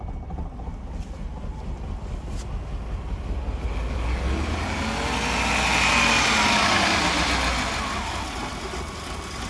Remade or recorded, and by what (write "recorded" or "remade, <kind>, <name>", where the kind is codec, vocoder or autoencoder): recorded